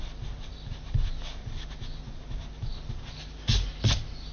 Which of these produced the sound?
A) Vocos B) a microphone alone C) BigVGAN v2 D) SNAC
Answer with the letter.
B